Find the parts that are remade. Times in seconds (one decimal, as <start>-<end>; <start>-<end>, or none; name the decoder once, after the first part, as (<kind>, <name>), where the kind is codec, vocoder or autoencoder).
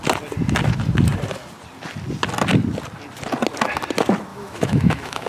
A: 4.3-5.3 (autoencoder, DAC-VAE)